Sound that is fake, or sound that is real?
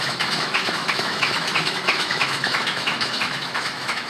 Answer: fake